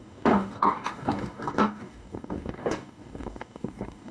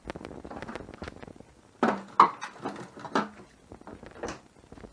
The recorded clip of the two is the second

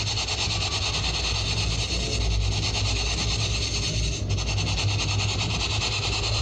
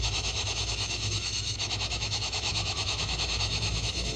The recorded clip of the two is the first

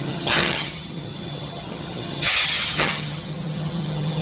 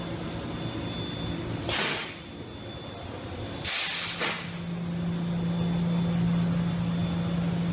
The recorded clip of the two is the second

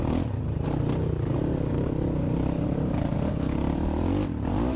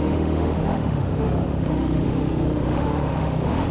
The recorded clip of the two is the first